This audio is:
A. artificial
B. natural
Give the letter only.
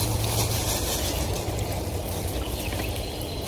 B